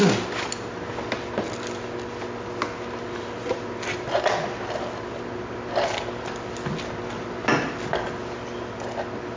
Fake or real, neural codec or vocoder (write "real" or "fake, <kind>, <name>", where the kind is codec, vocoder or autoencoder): real